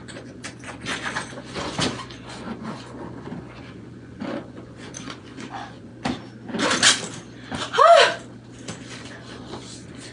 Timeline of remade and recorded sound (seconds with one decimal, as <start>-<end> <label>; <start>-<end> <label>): 0.0-5.9 remade; 5.9-8.8 recorded; 8.8-10.1 remade